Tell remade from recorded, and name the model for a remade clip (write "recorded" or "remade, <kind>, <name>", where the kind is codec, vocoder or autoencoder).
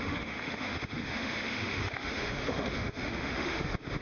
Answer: remade, autoencoder, DAC-VAE